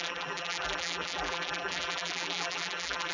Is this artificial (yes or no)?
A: yes